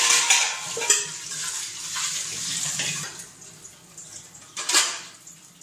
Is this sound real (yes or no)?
no